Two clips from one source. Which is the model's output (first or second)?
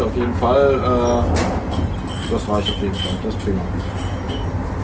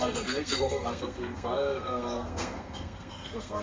second